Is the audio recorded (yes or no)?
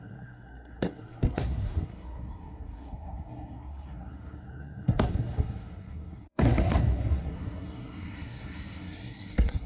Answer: no